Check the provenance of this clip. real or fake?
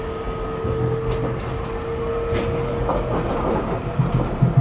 real